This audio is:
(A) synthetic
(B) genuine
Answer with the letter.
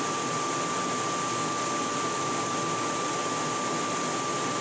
B